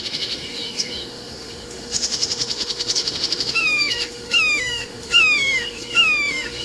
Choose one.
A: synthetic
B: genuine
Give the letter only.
A